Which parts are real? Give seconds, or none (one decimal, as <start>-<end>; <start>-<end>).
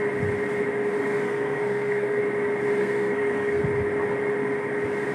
0.0-1.0; 2.2-2.8; 3.6-5.1